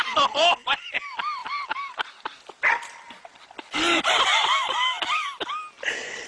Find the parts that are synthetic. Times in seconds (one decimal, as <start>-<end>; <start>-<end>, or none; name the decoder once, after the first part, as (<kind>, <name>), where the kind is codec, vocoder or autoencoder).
1.4-2.3 (vocoder, BigVGAN v2)